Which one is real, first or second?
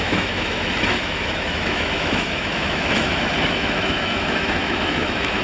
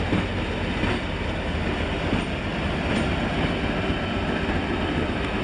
second